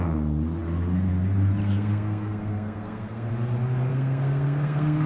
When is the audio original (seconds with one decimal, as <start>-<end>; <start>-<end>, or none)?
0.0-1.6; 3.3-3.9